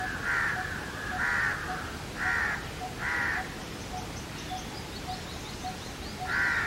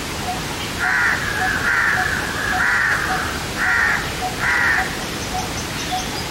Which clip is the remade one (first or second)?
second